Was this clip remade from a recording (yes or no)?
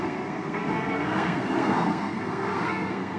yes